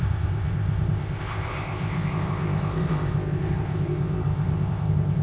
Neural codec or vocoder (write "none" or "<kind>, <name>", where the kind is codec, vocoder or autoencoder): codec, ZipCodec